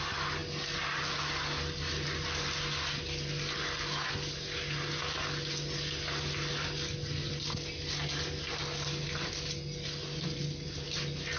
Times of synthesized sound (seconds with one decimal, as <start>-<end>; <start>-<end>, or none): none